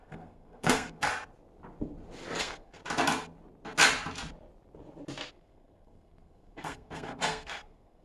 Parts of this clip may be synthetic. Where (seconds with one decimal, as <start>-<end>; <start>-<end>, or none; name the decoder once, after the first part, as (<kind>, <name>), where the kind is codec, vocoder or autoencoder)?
0.0-1.1 (codec, SNAC); 2.4-2.8; 5.3-8.0